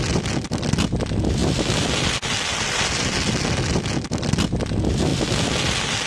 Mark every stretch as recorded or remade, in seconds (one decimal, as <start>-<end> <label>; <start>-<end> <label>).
0.0-6.1 recorded